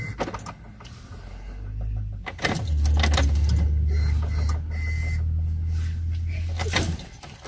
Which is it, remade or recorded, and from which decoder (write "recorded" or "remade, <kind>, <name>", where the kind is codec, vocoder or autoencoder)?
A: recorded